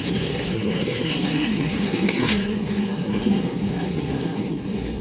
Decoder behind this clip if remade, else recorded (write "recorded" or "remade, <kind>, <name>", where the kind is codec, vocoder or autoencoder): remade, codec, SNAC